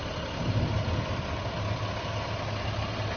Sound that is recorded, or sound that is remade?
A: recorded